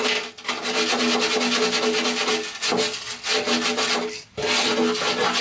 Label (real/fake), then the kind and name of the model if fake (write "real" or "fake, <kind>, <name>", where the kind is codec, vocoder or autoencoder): real